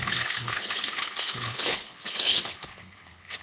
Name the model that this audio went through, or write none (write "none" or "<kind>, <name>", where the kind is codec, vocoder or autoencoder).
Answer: codec, HILCodec